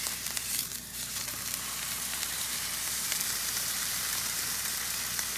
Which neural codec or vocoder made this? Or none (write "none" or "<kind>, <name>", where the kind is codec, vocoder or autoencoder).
vocoder, BigVGAN v2